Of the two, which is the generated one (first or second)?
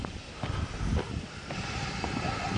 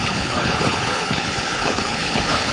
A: second